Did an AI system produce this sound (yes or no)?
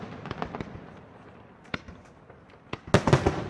no